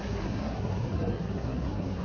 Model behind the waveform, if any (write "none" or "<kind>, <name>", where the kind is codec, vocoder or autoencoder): codec, SNAC